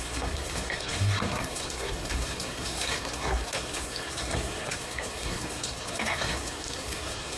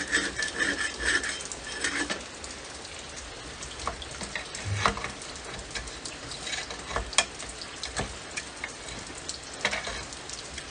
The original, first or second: second